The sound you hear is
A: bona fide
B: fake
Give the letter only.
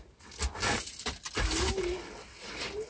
A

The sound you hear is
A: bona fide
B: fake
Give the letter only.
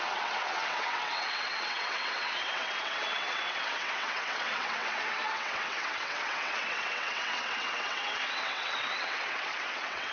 B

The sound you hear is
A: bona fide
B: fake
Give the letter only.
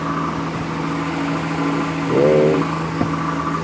A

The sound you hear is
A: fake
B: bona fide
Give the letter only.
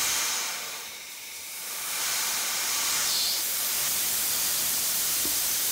A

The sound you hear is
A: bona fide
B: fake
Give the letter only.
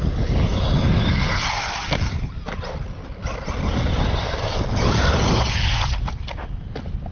A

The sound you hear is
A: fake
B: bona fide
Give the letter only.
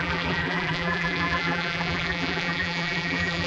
A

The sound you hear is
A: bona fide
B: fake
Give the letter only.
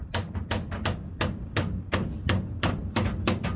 A